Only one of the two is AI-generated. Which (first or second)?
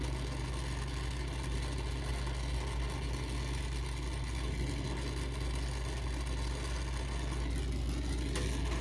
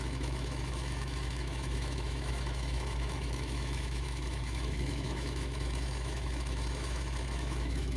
second